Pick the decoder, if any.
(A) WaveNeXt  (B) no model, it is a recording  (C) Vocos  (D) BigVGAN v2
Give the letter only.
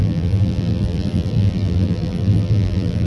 D